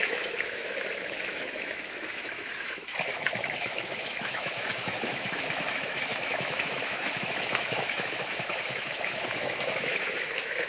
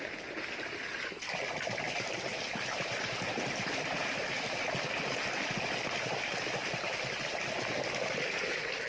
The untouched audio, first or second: second